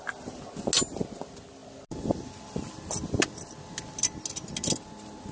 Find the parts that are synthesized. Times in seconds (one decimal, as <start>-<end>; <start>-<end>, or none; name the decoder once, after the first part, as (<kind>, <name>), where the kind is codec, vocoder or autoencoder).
none